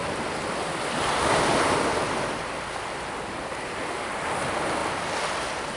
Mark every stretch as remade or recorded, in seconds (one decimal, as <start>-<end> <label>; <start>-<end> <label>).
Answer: 0.0-5.8 recorded

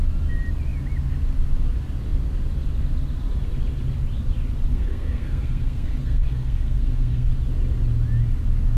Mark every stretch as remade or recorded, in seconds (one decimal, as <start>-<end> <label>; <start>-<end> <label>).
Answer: 0.0-4.7 recorded; 4.7-7.3 remade; 7.3-8.8 recorded

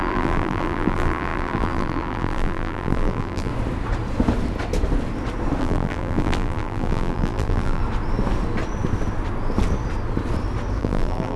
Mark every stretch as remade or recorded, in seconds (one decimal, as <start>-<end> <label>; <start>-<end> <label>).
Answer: 0.0-3.5 remade; 3.5-5.6 recorded; 5.6-7.8 remade; 7.8-10.8 recorded; 10.8-11.4 remade

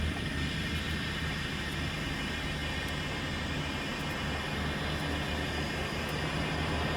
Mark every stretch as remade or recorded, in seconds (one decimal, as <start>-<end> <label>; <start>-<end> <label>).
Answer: 0.0-7.0 recorded

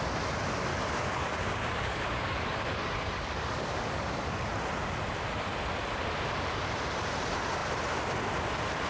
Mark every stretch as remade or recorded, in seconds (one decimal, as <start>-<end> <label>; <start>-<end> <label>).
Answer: 0.0-0.7 recorded; 0.7-4.5 remade; 4.5-8.9 recorded

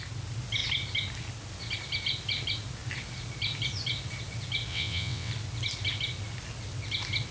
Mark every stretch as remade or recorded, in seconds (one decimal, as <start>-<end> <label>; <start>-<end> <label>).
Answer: 0.0-4.7 recorded; 4.7-5.3 remade; 5.3-7.3 recorded

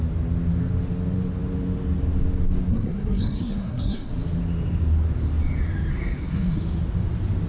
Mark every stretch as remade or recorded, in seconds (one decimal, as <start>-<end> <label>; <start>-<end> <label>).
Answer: 0.0-2.7 recorded; 2.7-4.1 remade; 4.1-5.9 recorded; 5.9-6.6 remade; 6.6-7.5 recorded

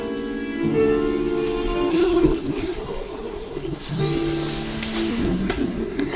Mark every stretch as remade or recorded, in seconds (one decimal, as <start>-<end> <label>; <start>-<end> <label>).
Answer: 0.0-1.9 recorded; 1.9-4.0 remade; 4.0-5.1 recorded; 5.1-6.2 remade